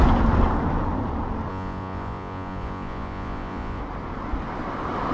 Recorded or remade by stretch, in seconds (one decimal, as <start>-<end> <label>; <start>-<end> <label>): 0.0-1.5 recorded; 1.5-3.8 remade; 3.8-5.1 recorded

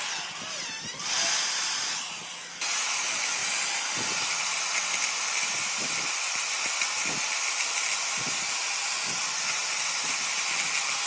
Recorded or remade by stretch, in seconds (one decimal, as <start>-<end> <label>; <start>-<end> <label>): 0.0-11.1 recorded

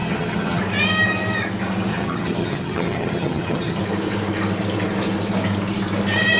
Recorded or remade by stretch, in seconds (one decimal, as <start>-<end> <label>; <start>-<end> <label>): 0.0-0.6 remade; 0.6-1.9 recorded; 1.9-3.8 remade; 3.8-6.4 recorded

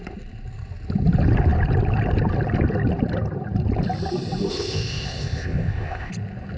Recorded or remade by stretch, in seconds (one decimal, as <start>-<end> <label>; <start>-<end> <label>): 0.0-4.5 recorded; 4.5-6.1 remade; 6.1-6.6 recorded

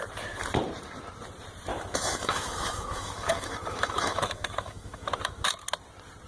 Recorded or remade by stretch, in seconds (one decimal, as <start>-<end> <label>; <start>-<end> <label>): 0.0-1.7 recorded; 1.7-5.5 remade; 5.5-6.3 recorded

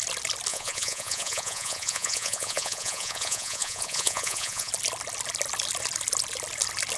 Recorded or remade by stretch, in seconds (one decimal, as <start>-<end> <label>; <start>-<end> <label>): 0.0-0.5 recorded; 0.5-4.7 remade; 4.7-7.0 recorded

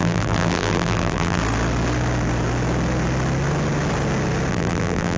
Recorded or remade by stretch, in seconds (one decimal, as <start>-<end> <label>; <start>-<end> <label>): 0.0-1.4 remade; 1.4-4.5 recorded; 4.5-5.2 remade

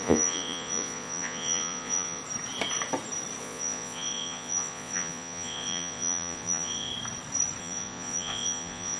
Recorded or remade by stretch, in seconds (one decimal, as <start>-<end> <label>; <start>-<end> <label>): 0.0-2.2 remade; 2.2-3.4 recorded; 3.4-6.9 remade; 6.9-7.6 recorded; 7.6-9.0 remade